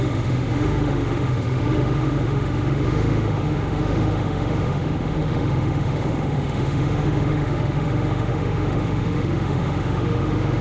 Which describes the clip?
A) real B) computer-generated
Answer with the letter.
B